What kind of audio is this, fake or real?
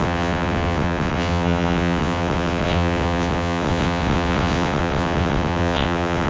fake